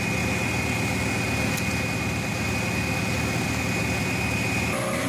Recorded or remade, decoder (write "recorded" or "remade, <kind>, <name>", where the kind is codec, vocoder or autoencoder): recorded